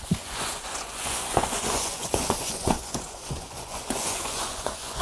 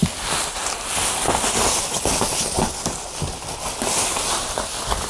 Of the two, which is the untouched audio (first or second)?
second